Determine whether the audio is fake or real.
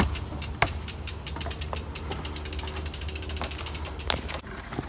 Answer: real